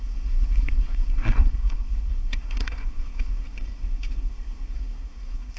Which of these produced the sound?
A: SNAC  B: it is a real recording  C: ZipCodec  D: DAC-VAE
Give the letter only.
A